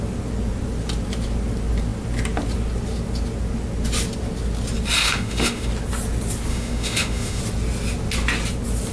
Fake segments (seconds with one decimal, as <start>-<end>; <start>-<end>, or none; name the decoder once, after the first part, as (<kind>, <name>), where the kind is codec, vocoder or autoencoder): 5.0-5.7 (autoencoder, DAC-VAE); 6.5-7.4